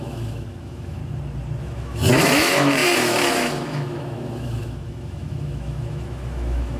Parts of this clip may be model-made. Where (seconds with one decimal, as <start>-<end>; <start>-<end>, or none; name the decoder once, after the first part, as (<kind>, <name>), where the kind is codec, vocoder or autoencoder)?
0.0-1.0 (autoencoder, DAC-VAE); 1.6-6.8